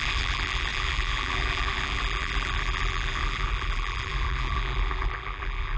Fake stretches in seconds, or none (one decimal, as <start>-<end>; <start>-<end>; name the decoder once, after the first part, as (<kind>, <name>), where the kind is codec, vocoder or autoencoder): 0.0-5.8 (vocoder, BigVGAN v2)